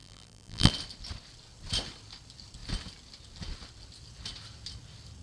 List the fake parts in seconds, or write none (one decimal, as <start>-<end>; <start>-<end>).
0.0-0.7